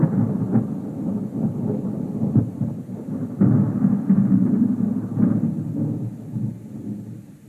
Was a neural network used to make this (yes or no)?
no